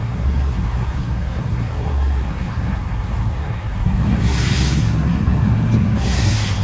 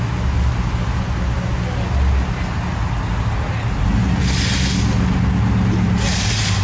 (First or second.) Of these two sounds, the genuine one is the second